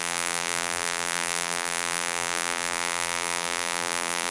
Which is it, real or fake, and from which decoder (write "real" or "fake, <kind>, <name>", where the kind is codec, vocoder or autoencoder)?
fake, vocoder, BigVGAN v2